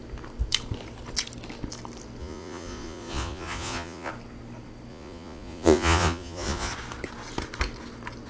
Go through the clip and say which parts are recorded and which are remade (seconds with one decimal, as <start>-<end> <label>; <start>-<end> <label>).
0.0-2.2 recorded; 2.2-4.1 remade; 4.1-4.9 recorded; 4.9-6.7 remade; 6.7-8.3 recorded

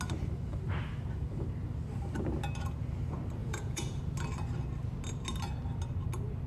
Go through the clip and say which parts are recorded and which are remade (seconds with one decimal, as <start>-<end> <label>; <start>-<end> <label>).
0.0-3.4 recorded; 3.4-4.0 remade; 4.0-6.5 recorded

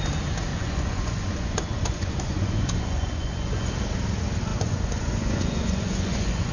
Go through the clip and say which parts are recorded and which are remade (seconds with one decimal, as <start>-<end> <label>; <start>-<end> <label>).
0.0-0.5 recorded; 0.5-3.7 remade; 3.7-4.5 recorded; 4.5-6.5 remade

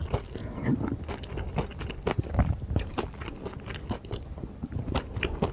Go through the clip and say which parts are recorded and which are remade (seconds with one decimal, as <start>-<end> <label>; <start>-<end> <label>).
0.0-5.5 recorded